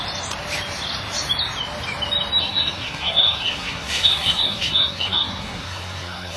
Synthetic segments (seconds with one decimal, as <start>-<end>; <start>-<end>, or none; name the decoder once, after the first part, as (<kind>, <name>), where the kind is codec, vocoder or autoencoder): 2.4-6.4 (codec, SNAC)